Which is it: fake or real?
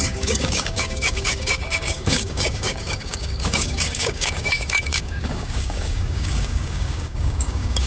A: fake